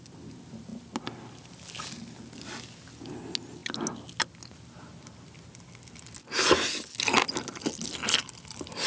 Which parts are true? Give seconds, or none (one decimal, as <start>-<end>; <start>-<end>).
0.0-8.9